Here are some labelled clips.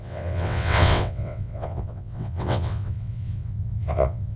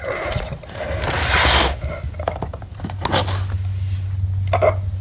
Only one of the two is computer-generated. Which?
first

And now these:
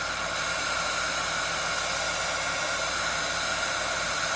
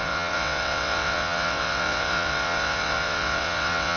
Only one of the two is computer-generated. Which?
second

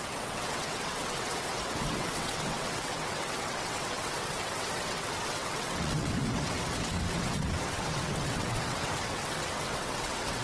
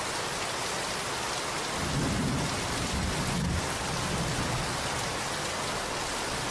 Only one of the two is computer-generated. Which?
first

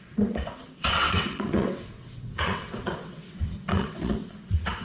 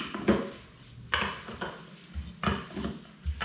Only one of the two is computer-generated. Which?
first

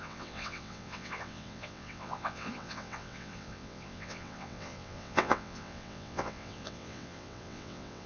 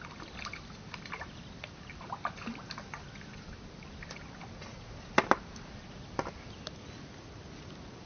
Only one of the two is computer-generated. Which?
first